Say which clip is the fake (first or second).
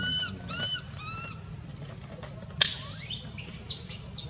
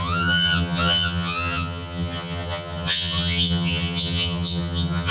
second